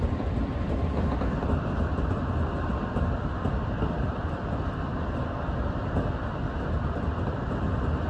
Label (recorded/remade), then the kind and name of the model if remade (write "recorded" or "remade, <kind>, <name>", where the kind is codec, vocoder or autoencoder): remade, vocoder, BigVGAN v2